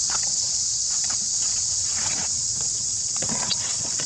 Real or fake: fake